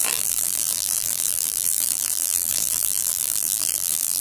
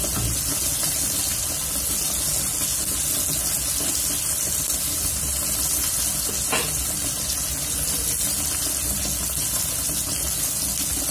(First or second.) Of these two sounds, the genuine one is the second